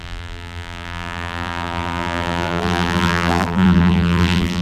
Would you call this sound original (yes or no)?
no